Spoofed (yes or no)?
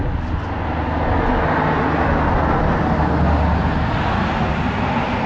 no